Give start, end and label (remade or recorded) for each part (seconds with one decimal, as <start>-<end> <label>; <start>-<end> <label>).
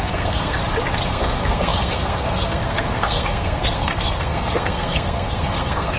0.0-0.6 remade; 0.6-1.1 recorded; 1.1-6.0 remade